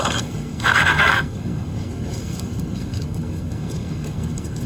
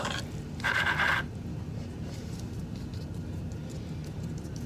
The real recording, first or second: second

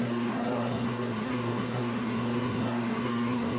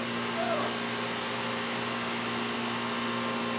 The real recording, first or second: second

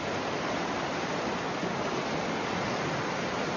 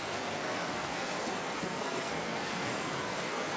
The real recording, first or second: first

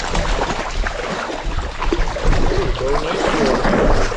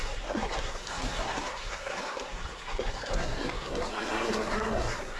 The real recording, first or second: first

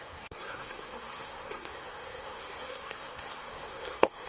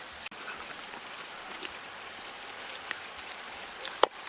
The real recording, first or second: second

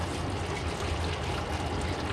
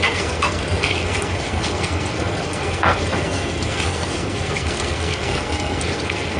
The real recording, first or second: first